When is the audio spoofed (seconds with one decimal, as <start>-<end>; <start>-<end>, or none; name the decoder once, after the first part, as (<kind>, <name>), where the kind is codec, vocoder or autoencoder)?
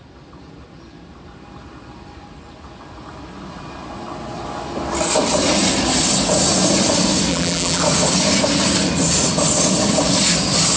7.3-7.8 (vocoder, BigVGAN v2)